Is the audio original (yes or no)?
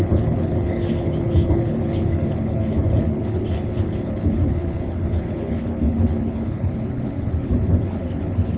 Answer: no